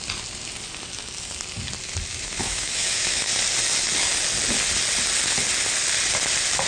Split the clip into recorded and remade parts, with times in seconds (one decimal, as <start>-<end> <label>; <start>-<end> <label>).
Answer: 0.0-2.1 recorded; 2.1-3.3 remade; 3.3-6.7 recorded